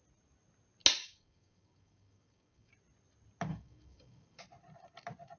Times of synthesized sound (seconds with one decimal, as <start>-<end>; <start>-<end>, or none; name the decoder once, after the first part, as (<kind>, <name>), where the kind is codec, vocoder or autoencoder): 1.0-2.7 (codec, DAC); 3.5-4.4